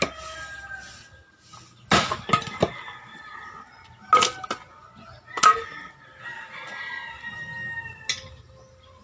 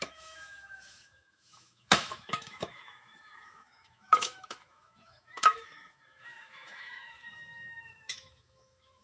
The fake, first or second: second